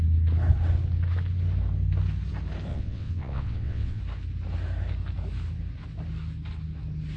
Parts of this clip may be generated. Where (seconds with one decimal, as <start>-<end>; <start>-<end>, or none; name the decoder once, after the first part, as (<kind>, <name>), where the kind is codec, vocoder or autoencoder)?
2.7-4.0 (vocoder, WaveNeXt)